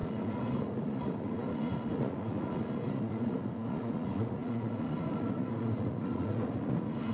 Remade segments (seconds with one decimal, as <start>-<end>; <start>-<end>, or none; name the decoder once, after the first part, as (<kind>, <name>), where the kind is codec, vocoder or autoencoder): 0.0-7.1 (vocoder, Vocos)